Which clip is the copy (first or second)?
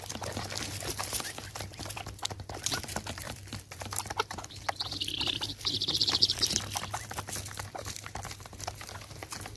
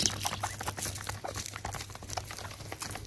first